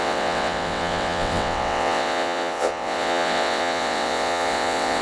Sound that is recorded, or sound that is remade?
remade